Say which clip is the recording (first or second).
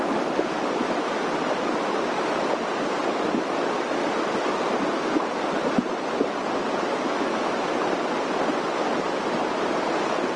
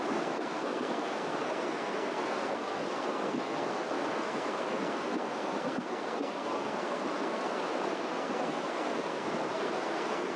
first